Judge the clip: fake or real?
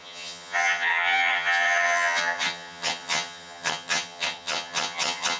fake